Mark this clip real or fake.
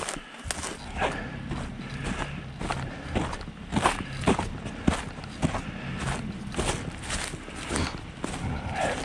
real